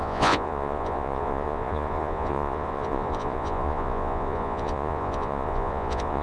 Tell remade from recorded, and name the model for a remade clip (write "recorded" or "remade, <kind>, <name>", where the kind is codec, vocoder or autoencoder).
remade, vocoder, Vocos